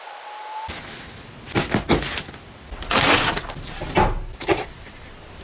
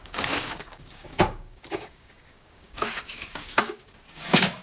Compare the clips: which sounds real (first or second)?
first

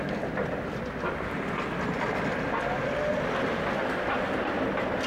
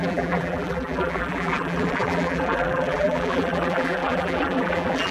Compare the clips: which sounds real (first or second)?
first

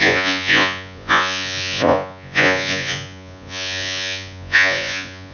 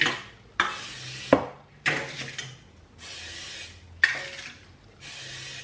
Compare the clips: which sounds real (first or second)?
second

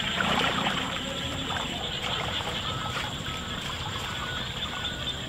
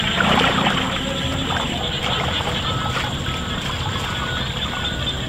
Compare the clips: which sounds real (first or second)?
second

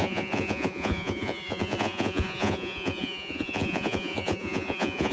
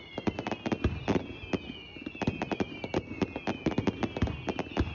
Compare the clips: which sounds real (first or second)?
second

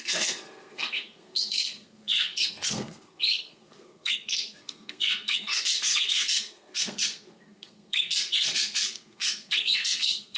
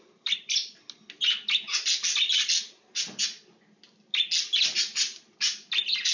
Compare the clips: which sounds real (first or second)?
second